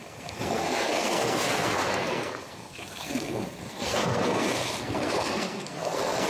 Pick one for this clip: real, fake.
fake